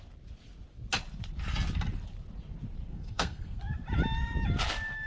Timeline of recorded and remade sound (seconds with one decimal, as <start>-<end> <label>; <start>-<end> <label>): 0.0-2.9 recorded; 2.9-3.6 remade; 3.6-5.1 recorded